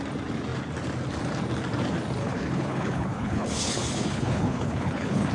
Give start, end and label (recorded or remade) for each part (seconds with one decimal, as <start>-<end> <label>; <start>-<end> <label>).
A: 0.0-2.2 recorded; 2.2-5.3 remade